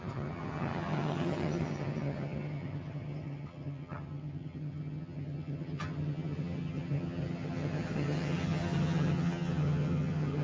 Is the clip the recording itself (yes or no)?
no